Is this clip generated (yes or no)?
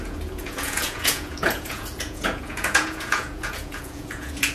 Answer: yes